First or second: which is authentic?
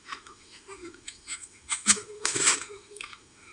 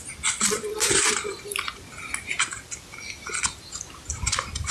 second